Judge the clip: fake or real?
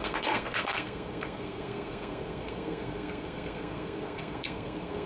fake